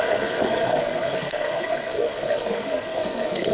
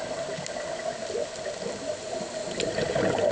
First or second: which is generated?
first